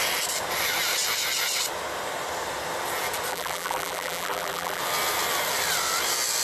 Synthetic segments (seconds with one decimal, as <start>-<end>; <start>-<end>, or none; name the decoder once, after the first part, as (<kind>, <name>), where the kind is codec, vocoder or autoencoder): 3.3-4.8 (vocoder, BigVGAN v2)